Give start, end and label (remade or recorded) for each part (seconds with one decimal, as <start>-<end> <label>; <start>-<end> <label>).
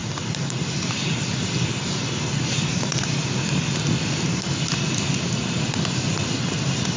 0.0-2.7 recorded; 2.7-3.3 remade; 3.3-7.0 recorded